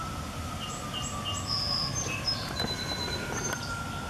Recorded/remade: recorded